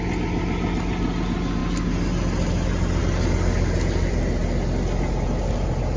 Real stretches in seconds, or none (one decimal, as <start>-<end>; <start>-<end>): 0.0-6.0